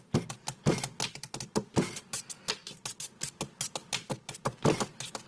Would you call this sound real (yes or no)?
yes